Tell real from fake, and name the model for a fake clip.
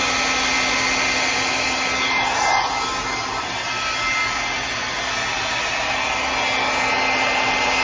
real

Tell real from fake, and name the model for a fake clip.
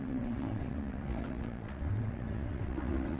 fake, vocoder, WaveNeXt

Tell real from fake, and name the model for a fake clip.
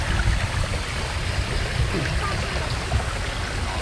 real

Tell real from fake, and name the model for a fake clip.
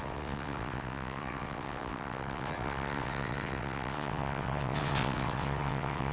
fake, vocoder, WaveNeXt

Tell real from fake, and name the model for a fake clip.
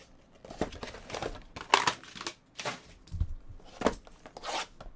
real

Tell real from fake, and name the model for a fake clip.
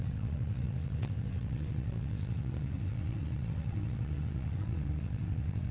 fake, vocoder, WaveNeXt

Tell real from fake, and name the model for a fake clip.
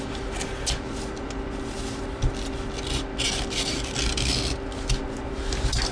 real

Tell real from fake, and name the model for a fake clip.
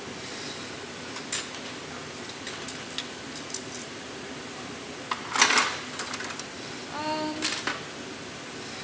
real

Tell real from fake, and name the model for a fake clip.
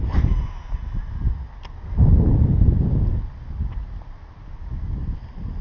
real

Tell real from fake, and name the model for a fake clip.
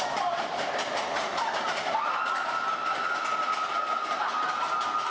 real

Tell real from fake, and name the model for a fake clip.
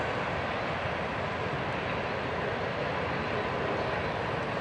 real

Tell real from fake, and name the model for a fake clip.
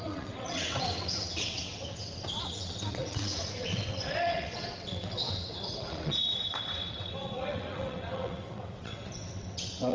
fake, vocoder, WaveNeXt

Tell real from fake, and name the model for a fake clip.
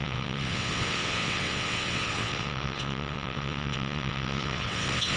fake, vocoder, WaveNeXt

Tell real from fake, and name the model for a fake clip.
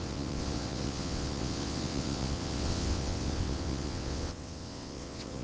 fake, vocoder, WaveNeXt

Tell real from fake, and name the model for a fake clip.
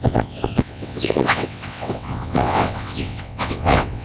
fake, vocoder, WaveNeXt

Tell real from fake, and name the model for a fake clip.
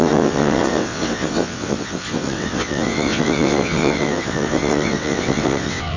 fake, vocoder, WaveNeXt